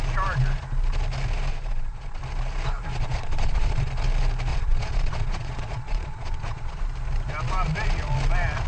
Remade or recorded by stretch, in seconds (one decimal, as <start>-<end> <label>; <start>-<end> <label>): 0.0-1.5 recorded; 1.5-2.2 remade; 2.2-2.9 recorded; 2.9-3.9 remade; 3.9-4.5 recorded; 4.5-6.8 remade; 6.8-8.7 recorded